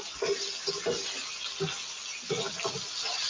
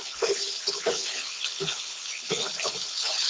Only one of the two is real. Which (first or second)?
first